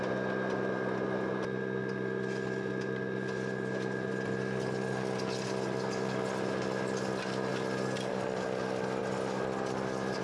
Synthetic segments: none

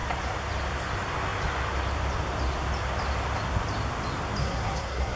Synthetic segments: 4.4-5.2 (codec, SNAC)